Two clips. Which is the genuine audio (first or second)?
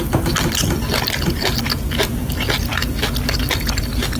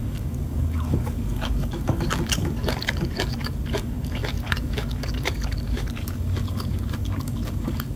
first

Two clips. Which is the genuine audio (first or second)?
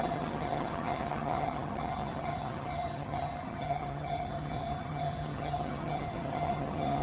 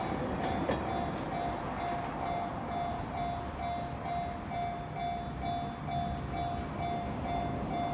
second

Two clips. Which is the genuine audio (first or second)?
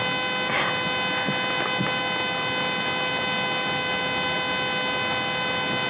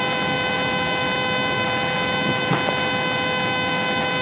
first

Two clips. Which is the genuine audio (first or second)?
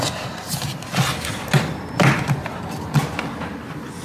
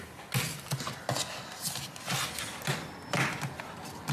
second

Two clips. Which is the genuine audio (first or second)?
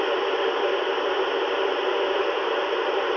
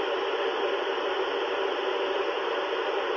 first